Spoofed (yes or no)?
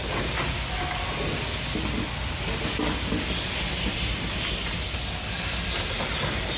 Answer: no